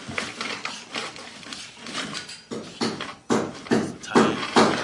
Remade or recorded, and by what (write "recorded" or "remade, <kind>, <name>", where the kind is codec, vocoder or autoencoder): recorded